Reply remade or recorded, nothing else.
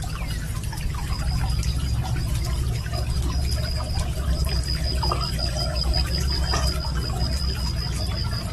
recorded